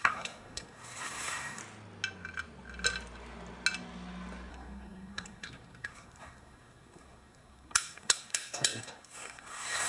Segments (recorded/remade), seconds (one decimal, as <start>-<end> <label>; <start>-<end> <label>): 0.0-1.6 remade; 1.6-4.5 recorded; 4.5-9.9 remade